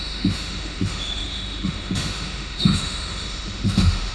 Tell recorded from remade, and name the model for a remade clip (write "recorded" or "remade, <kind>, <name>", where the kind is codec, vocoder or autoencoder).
remade, autoencoder, DAC-VAE